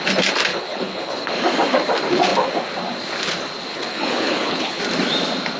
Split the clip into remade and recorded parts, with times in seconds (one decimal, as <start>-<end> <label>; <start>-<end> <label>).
0.0-0.5 recorded; 0.5-1.3 remade; 1.3-3.7 recorded; 3.7-4.8 remade; 4.8-5.6 recorded